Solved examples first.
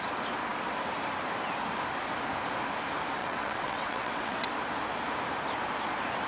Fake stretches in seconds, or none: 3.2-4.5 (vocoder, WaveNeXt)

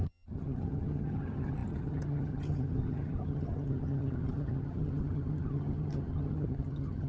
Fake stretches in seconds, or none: 0.0-7.1 (vocoder, HiFi-GAN)

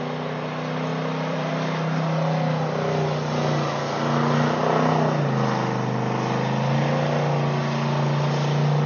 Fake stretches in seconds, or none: 0.9-1.5 (vocoder, BigVGAN v2)

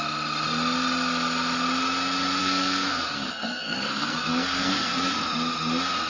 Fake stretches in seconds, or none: 2.4-5.1 (codec, SNAC)

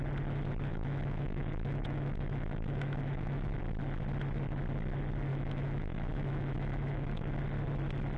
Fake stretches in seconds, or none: 0.7-3.6 (autoencoder, DAC-VAE); 5.3-7.4

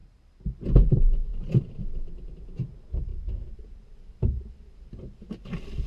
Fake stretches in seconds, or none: 0.0-0.5 (vocoder, BigVGAN v2); 1.3-2.6